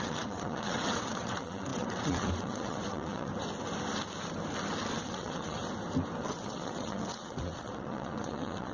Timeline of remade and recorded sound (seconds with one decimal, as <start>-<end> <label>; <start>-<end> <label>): 0.0-3.3 remade; 3.3-4.9 recorded; 4.9-5.6 remade; 5.6-6.2 recorded; 6.2-8.7 remade